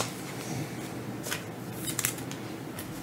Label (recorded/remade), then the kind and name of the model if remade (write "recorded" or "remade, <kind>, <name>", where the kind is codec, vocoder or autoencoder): recorded